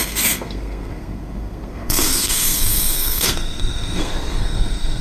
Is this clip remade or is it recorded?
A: remade